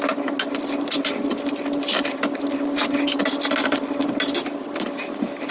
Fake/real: real